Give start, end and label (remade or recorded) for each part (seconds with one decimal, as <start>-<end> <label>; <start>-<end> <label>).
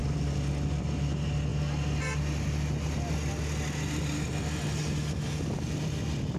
0.0-6.4 recorded